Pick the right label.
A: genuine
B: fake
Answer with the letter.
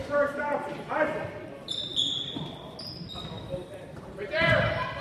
A